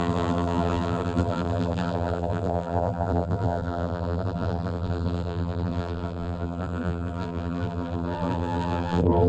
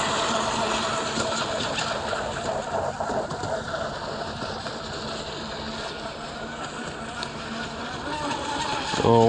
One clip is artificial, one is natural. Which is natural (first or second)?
second